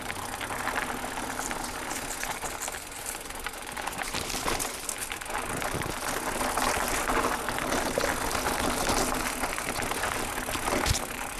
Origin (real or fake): real